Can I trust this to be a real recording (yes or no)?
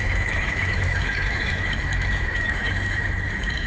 no